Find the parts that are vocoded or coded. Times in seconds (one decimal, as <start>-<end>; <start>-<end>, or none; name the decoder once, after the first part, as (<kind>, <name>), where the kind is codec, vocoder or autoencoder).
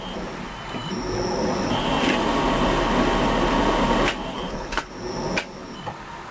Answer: 4.3-4.9 (codec, HILCodec)